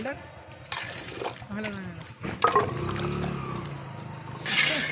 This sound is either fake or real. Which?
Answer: real